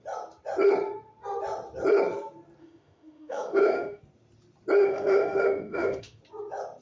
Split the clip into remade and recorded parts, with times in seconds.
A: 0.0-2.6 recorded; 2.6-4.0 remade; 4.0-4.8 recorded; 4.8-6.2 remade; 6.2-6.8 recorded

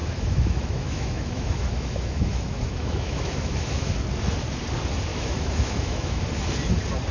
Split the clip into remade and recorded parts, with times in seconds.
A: 0.0-3.9 remade; 3.9-5.1 recorded; 5.1-6.2 remade; 6.2-7.1 recorded

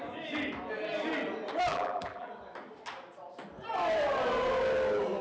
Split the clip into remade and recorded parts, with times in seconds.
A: 0.0-1.7 recorded; 1.7-2.3 remade; 2.3-5.2 recorded

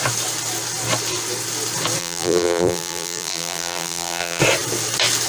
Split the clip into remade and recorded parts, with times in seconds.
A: 0.0-2.0 recorded; 2.0-4.4 remade; 4.4-5.3 recorded

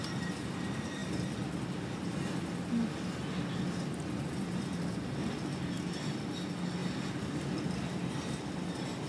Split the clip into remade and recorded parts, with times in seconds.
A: 0.0-6.8 recorded; 6.8-7.5 remade; 7.5-9.1 recorded

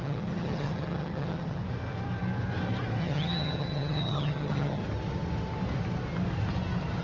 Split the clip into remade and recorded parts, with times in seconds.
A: 0.0-1.6 remade; 1.6-3.0 recorded; 3.0-4.8 remade; 4.8-7.0 recorded